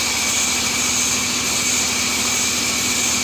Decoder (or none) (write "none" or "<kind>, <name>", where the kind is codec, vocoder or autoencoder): none